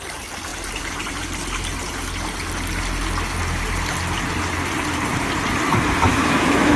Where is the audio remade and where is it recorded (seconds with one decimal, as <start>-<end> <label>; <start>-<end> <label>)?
0.0-6.1 recorded; 6.1-6.8 remade